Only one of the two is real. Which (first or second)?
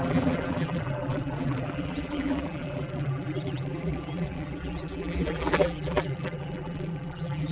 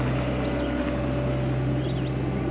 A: second